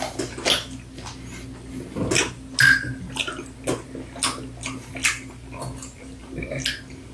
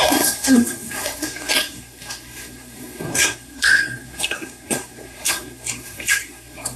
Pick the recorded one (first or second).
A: first